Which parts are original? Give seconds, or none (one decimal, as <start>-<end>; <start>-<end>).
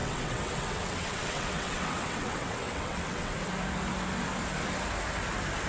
3.4-5.7